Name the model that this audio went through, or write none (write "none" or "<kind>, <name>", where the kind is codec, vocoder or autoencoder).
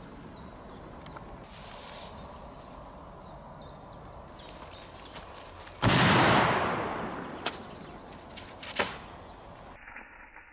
none